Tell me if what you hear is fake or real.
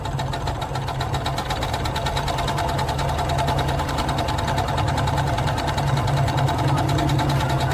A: real